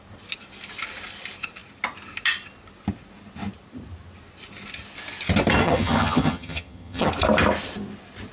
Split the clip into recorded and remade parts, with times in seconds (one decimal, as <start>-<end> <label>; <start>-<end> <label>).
0.0-5.6 recorded; 5.6-7.1 remade; 7.1-8.3 recorded